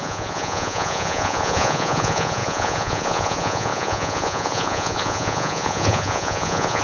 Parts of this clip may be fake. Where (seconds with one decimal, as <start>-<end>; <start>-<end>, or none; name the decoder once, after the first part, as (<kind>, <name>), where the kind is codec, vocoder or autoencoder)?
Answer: 0.0-6.8 (vocoder, Vocos)